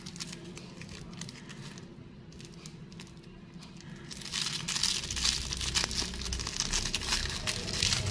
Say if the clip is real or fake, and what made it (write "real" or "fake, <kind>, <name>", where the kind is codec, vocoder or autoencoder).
real